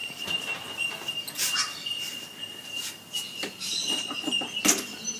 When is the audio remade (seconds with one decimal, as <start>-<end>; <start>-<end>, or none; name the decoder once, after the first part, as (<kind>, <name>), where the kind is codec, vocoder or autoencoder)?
3.7-4.3 (vocoder, BigVGAN v2)